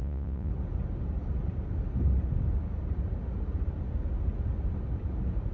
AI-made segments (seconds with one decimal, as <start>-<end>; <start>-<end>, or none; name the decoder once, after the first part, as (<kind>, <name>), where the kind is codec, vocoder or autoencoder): 0.0-0.5 (vocoder, Vocos)